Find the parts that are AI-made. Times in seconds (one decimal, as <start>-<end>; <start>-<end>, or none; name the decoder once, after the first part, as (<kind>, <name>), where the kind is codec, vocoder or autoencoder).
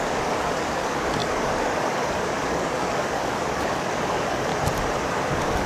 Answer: 0.0-4.5 (codec, DAC); 5.3-5.7